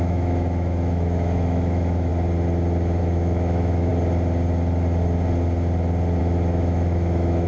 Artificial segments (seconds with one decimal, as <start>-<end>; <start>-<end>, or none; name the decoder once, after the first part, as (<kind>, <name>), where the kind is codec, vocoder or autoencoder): 0.0-2.1 (autoencoder, DAC-VAE); 3.0-3.9; 6.2-7.5